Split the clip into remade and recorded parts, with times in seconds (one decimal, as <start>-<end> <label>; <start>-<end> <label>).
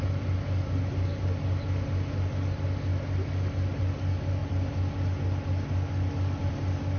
0.0-7.0 recorded